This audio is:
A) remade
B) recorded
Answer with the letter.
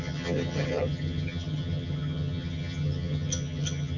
A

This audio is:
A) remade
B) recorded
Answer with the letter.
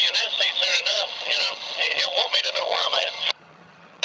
A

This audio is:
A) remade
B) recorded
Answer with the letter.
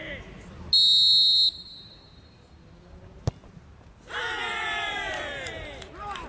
B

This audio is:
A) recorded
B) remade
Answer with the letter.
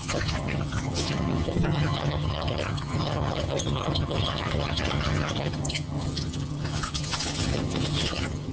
B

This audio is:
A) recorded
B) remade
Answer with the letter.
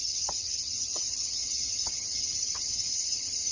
B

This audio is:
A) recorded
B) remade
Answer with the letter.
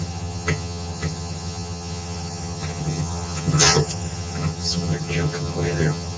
B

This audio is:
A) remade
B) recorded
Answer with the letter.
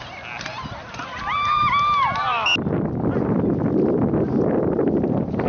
B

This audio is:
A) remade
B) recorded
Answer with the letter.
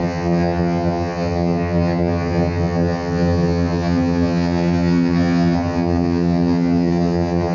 A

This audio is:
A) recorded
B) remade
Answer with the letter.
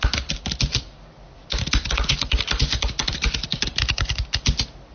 A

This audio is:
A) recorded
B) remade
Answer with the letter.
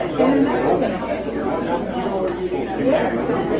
A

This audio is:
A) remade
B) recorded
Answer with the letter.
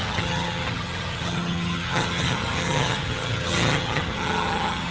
A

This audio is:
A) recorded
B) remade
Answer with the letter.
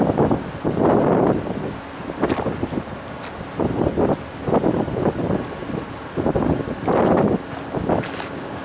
A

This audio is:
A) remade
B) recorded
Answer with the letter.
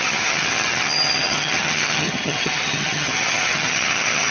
A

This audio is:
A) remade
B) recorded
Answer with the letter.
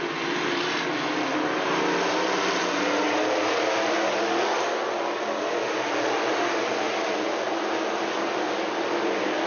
B